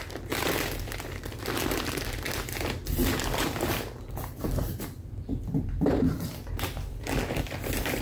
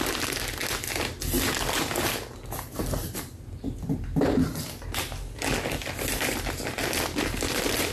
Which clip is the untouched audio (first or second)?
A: second